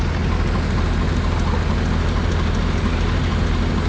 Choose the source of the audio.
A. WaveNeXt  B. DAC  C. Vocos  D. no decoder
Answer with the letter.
D